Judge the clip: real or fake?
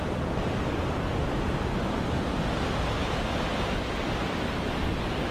real